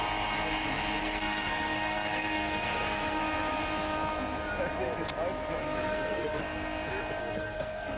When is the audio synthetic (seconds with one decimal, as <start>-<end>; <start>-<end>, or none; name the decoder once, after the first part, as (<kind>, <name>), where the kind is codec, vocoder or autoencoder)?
1.0-3.2 (codec, SNAC); 5.6-6.4; 7.2-8.0